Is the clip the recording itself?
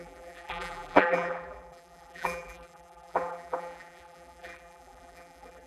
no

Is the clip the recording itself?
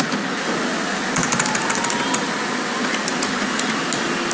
yes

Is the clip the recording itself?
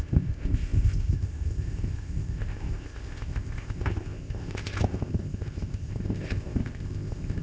no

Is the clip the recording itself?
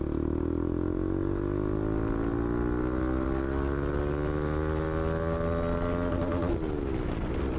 yes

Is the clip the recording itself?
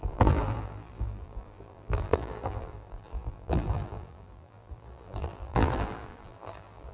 no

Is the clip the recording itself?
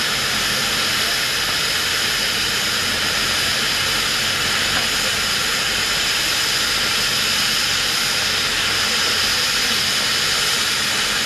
yes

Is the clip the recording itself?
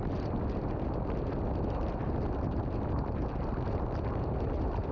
yes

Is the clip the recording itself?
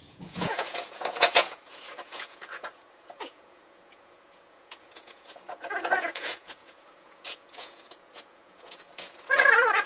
no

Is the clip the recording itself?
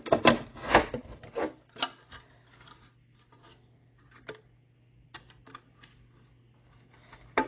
yes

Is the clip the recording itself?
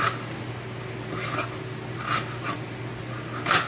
yes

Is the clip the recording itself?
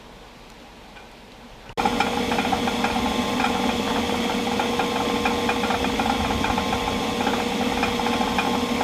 yes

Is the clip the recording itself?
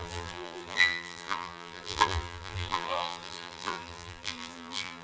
no